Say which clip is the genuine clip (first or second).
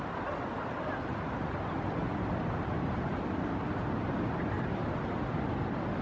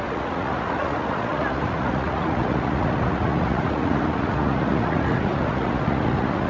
first